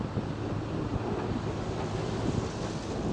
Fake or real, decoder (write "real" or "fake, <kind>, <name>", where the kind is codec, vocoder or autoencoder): real